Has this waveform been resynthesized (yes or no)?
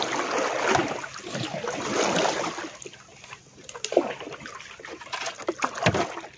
no